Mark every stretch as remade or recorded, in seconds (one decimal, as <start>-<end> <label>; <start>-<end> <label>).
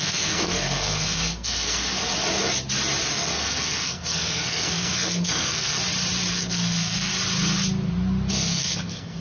0.0-2.1 remade; 2.1-3.1 recorded; 3.1-5.8 remade; 5.8-6.3 recorded; 6.3-7.1 remade; 7.1-8.3 recorded; 8.3-9.2 remade